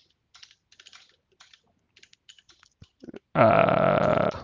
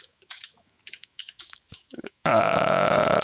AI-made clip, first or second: second